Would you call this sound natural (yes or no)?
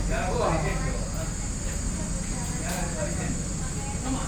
yes